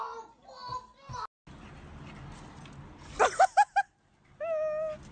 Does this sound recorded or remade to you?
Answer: recorded